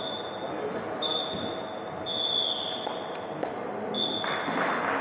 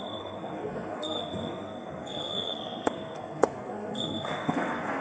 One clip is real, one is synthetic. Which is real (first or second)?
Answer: first